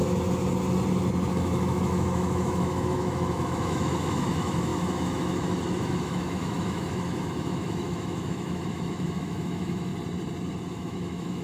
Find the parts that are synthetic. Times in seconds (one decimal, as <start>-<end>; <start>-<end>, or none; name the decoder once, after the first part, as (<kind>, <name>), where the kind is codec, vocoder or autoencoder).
1.3-9.9 (autoencoder, DAC-VAE); 10.7-11.4